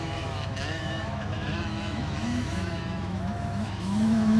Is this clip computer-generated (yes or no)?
yes